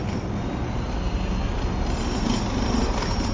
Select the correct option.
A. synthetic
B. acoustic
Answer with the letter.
B